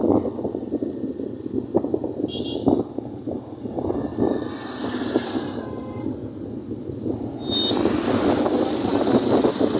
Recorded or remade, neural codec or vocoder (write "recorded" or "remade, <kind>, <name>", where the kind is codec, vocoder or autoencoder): recorded